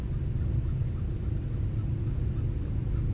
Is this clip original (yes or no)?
yes